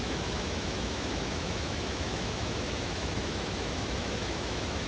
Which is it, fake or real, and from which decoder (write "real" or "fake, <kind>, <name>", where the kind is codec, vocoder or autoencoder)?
fake, autoencoder, DAC-VAE